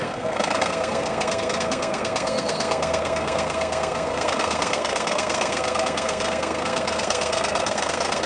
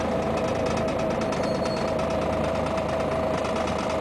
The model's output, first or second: first